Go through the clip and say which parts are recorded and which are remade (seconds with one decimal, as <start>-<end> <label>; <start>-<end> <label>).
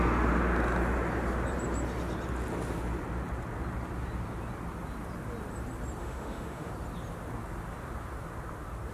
0.0-6.0 recorded; 6.0-6.7 remade; 6.7-8.9 recorded